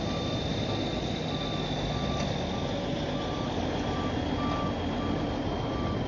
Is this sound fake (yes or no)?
no